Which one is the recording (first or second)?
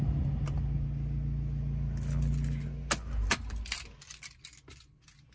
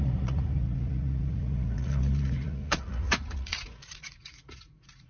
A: first